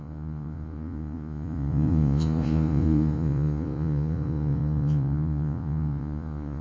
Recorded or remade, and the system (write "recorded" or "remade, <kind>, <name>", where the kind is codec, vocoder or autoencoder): remade, vocoder, Vocos